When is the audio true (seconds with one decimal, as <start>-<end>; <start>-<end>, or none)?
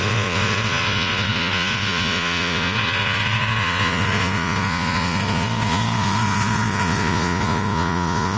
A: none